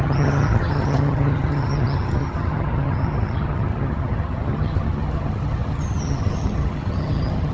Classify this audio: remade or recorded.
remade